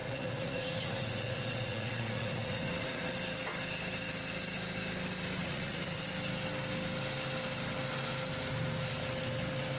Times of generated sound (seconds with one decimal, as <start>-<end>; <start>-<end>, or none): 0.0-3.1; 5.4-6.0